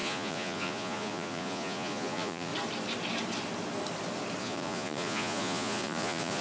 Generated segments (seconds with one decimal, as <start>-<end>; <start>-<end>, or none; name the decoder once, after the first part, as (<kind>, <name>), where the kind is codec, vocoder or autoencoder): 0.0-2.5 (vocoder, Vocos); 4.4-6.4

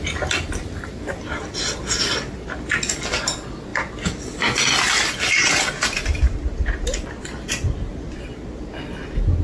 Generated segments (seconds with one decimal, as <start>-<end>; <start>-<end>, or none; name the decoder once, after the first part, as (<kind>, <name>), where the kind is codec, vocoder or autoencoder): none

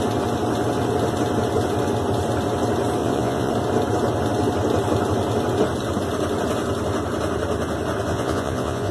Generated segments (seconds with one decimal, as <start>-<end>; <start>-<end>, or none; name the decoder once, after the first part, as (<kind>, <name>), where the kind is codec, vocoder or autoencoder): 3.0-3.5 (vocoder, Vocos); 8.1-8.9

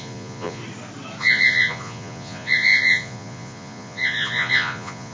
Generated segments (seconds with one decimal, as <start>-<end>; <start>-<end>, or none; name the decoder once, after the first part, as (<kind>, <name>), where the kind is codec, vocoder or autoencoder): 0.0-0.6 (vocoder, Vocos); 1.2-5.1

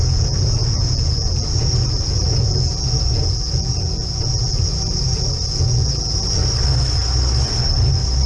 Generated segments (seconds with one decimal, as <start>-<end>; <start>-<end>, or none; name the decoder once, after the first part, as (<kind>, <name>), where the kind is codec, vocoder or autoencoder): 0.0-6.4 (vocoder, Vocos)

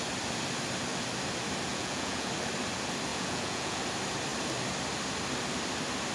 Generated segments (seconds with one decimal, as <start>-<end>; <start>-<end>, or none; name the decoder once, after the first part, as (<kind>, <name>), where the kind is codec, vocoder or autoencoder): 1.7-2.3 (vocoder, Vocos); 3.1-3.8

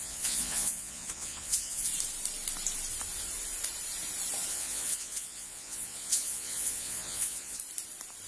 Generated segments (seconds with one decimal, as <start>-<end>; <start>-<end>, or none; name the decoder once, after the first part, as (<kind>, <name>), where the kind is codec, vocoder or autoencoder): 0.0-1.9 (vocoder, Vocos); 4.5-7.6